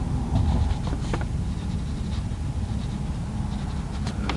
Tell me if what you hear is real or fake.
real